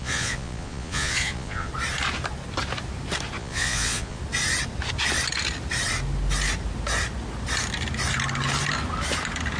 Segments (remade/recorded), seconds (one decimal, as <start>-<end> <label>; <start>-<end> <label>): 0.0-1.7 remade; 1.7-3.4 recorded; 3.4-4.2 remade; 4.2-9.6 recorded